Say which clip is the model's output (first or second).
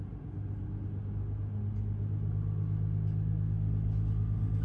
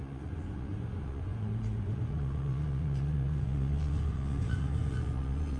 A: second